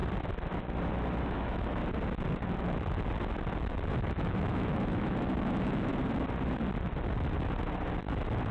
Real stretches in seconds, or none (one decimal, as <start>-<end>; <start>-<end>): 0.0-1.2; 1.8-3.9; 5.9-8.5